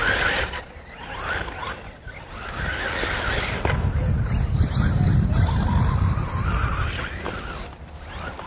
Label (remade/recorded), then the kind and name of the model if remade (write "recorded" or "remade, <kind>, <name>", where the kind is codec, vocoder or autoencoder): recorded